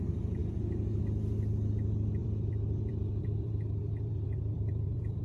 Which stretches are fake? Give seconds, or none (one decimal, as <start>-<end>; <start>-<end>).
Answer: 2.2-5.2